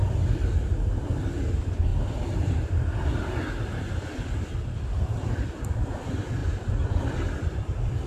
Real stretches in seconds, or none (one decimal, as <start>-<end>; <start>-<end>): 0.0-8.1